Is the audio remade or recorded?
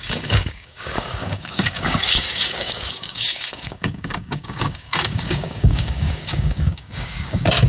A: remade